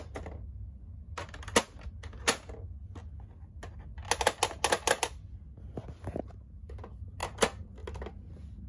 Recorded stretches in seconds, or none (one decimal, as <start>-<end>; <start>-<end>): 0.0-8.7